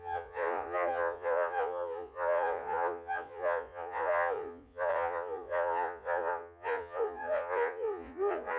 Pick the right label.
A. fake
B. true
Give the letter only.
A